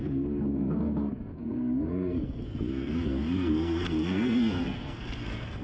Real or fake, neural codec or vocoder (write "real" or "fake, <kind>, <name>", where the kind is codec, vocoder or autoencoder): fake, codec, SNAC